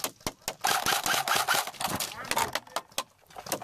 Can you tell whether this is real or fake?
real